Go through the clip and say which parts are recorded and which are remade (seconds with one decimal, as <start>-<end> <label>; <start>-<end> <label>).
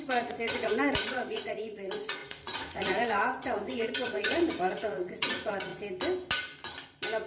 0.0-5.7 remade; 5.7-7.3 recorded